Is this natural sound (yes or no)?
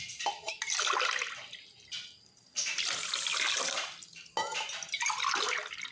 yes